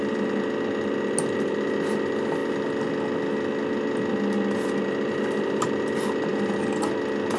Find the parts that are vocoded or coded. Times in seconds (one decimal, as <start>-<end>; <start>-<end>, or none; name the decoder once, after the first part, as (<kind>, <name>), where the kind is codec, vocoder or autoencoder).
none